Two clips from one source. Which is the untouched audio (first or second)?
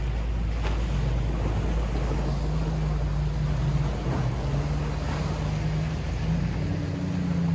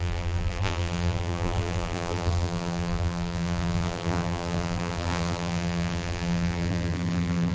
first